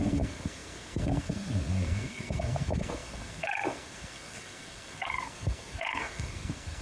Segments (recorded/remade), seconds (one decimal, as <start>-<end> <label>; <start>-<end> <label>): 0.0-6.8 remade